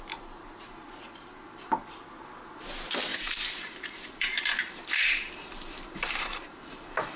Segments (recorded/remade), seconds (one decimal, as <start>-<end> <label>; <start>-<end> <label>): 0.0-3.1 recorded; 3.1-7.2 remade